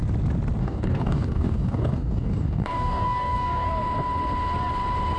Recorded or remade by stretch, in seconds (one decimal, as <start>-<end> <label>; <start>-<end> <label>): 0.0-0.6 recorded; 0.6-3.7 remade; 3.7-5.2 recorded